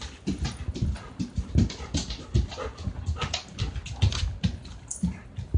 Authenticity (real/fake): real